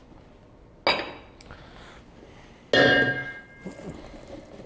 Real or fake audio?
real